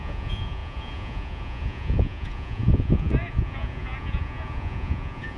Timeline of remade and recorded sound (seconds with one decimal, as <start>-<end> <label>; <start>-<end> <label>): 0.0-5.4 remade